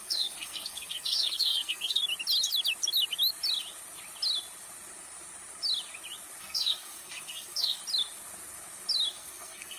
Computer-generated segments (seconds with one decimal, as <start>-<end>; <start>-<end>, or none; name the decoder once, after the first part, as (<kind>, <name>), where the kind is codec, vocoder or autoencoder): 0.0-2.0 (codec, SNAC); 6.4-7.8; 9.1-9.8